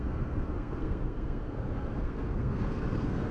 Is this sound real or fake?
fake